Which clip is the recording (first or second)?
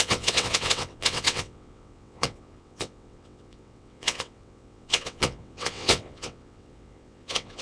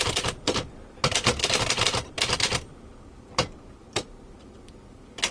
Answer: second